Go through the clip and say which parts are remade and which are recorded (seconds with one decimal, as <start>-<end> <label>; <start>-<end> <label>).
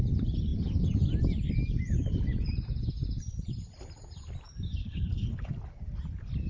0.0-4.8 recorded; 4.8-5.5 remade; 5.5-6.5 recorded